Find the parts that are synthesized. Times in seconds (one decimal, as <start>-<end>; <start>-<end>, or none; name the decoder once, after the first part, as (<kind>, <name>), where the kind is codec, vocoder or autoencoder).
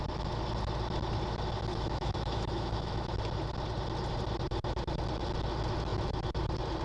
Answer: 1.7-3.1 (autoencoder, DAC-VAE)